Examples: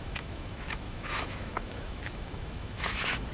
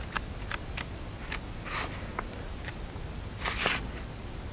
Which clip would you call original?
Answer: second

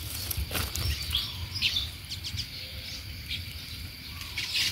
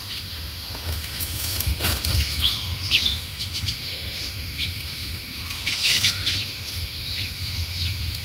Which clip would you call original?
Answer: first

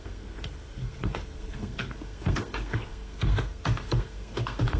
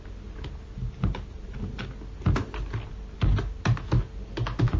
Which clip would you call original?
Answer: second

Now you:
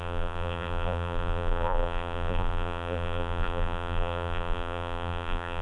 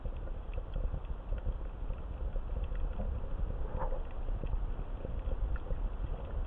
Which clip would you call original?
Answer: second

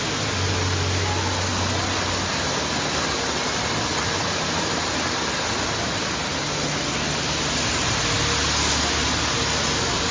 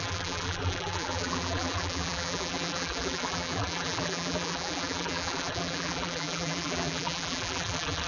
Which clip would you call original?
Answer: first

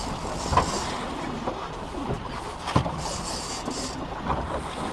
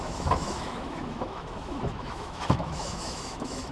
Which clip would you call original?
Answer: first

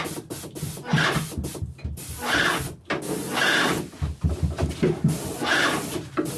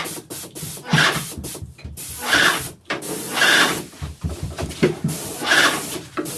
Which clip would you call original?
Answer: first